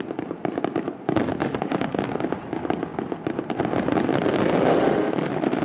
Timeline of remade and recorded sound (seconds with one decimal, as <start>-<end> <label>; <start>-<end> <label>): 0.0-1.4 recorded; 1.4-2.0 remade; 2.0-4.7 recorded; 4.7-5.6 remade